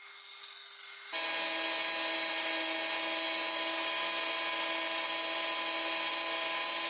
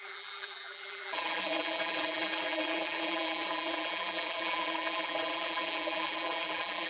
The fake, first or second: second